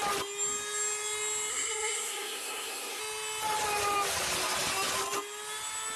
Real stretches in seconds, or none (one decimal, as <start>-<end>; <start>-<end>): 0.0-1.5; 3.0-6.0